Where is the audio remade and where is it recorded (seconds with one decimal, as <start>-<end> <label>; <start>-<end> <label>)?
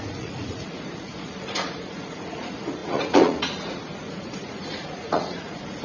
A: 0.0-5.8 remade